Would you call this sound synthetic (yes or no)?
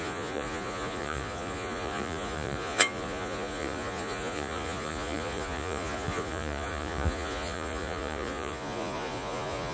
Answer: yes